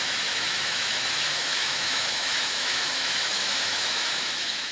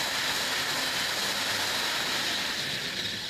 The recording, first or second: second